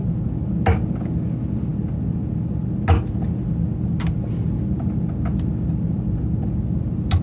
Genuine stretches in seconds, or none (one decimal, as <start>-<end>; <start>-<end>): 0.0-7.2